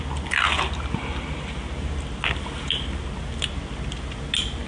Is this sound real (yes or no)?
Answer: yes